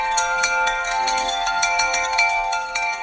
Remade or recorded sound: remade